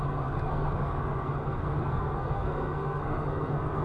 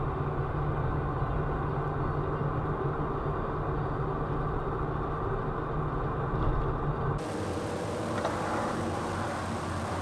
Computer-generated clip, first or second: first